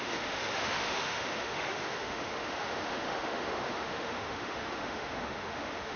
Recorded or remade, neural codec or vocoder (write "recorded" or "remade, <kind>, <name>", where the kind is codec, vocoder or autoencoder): remade, autoencoder, DAC-VAE